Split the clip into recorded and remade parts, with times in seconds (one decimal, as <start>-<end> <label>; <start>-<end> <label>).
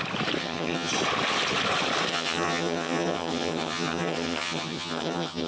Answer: 0.0-0.4 recorded; 0.4-0.9 remade; 0.9-2.1 recorded; 2.1-5.5 remade